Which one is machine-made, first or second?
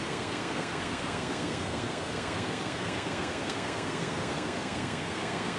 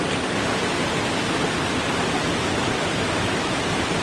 first